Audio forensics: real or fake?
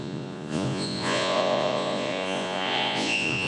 fake